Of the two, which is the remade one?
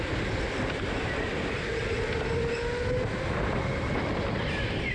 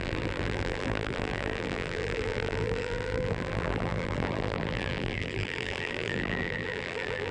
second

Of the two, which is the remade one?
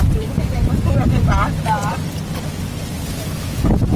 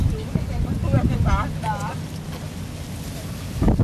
first